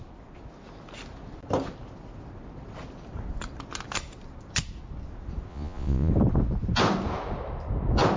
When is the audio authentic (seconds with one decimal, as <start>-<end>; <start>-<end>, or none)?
0.0-5.5; 6.1-8.2